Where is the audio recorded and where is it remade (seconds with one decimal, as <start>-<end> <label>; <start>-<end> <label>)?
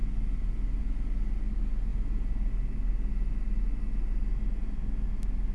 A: 0.0-5.5 recorded